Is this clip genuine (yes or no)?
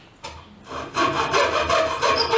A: yes